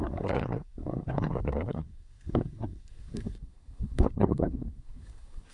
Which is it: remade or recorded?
remade